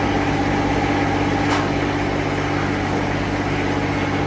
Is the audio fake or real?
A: real